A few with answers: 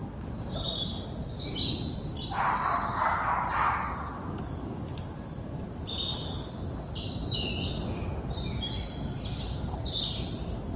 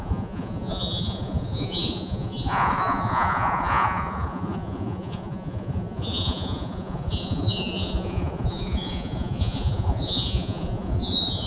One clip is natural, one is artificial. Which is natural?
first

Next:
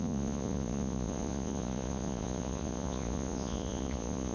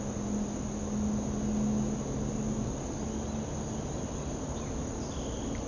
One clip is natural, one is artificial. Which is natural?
second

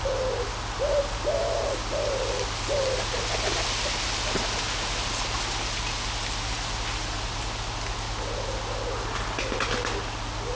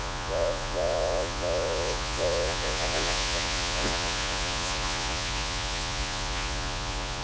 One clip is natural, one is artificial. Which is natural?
first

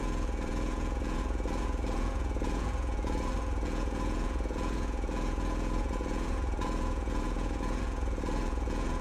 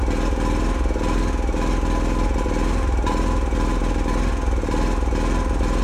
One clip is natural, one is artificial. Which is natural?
second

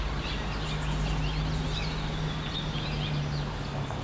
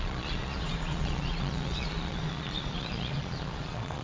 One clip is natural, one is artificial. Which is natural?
first